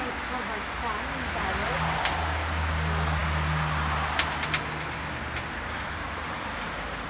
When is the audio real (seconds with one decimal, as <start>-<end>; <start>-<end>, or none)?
0.0-7.1